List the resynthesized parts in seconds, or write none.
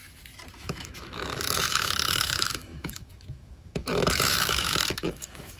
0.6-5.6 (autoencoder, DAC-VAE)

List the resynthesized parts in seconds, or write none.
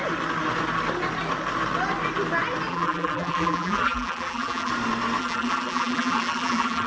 2.7-4.7 (vocoder, BigVGAN v2); 5.2-6.9